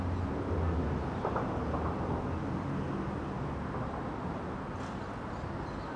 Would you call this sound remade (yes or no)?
no